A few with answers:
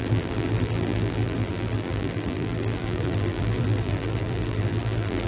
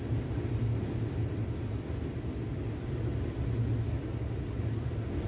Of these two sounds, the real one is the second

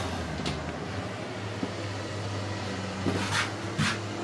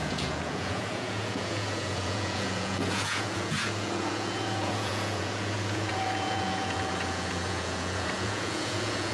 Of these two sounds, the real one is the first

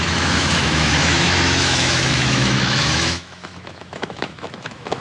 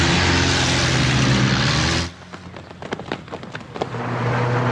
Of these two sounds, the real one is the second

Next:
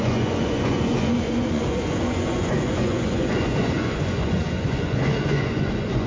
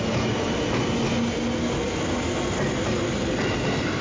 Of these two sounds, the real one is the second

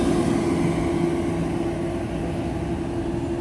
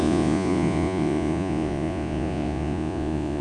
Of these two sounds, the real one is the first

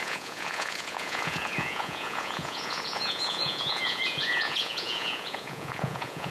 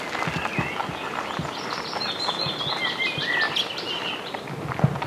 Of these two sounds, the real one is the second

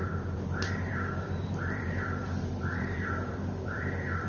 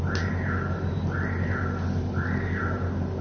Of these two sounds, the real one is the second